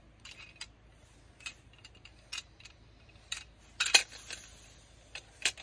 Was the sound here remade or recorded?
recorded